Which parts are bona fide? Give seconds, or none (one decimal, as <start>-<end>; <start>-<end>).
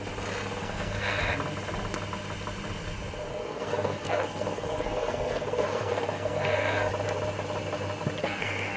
0.0-0.6; 1.2-3.3; 6.9-8.2